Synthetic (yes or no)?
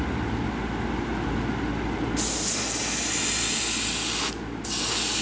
no